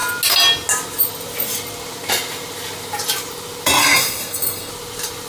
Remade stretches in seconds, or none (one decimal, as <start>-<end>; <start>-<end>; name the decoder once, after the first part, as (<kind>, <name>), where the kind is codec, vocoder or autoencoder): 3.8-4.7 (codec, SNAC)